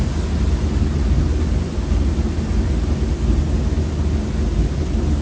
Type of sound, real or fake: real